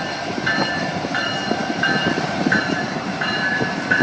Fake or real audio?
fake